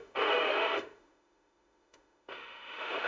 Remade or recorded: remade